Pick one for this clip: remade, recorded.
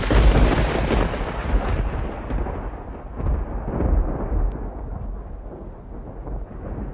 recorded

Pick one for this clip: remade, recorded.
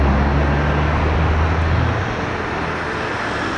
recorded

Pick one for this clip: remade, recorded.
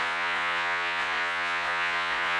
remade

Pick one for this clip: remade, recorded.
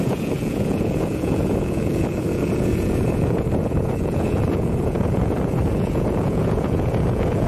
remade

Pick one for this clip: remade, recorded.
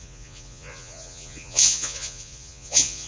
remade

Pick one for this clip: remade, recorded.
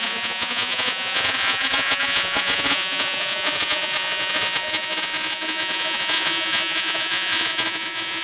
remade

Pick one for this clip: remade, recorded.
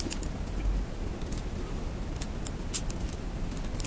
recorded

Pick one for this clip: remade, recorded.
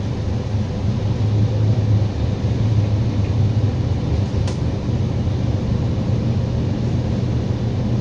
recorded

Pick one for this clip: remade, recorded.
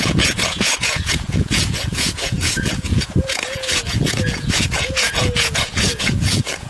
remade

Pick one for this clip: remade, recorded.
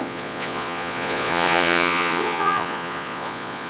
remade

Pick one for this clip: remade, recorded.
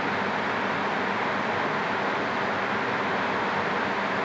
recorded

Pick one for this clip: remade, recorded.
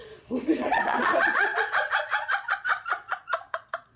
remade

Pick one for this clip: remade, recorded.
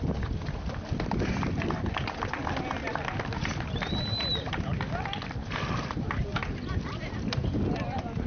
recorded